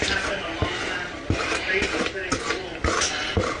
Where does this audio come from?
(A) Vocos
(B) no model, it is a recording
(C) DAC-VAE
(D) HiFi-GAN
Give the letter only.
B